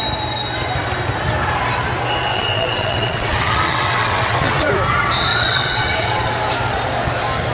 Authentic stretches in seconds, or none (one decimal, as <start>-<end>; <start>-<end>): 0.0-2.3; 4.7-5.3; 6.3-7.5